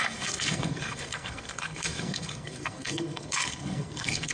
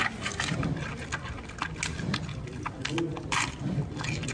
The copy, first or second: first